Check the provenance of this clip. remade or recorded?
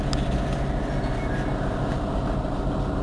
recorded